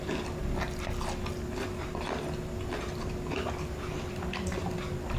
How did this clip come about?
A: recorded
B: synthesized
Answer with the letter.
A